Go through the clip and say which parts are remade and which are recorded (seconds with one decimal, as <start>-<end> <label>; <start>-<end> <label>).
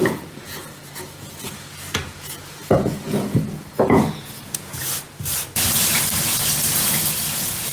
0.0-4.8 remade; 4.8-6.7 recorded; 6.7-7.7 remade